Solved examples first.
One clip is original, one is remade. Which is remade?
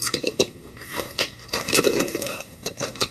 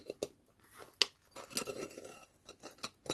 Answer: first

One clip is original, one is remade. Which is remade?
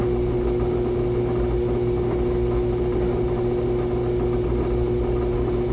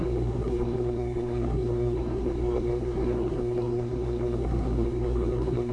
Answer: second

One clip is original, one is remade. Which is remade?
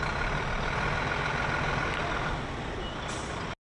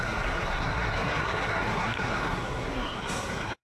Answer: second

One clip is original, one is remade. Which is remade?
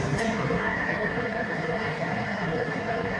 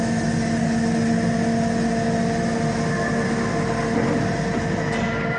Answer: first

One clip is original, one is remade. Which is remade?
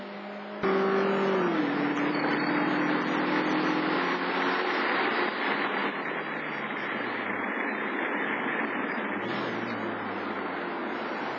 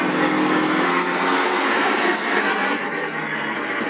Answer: second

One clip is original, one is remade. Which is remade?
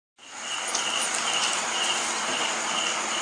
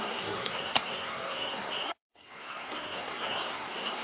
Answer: second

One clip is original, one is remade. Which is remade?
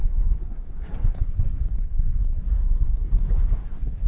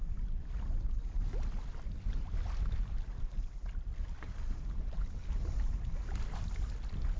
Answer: first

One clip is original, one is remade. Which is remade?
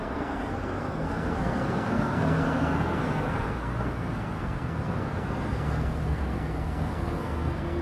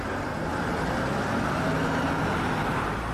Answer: first